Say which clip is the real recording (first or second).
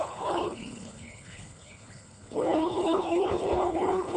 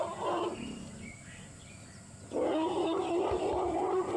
second